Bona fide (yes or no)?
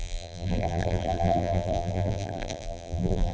no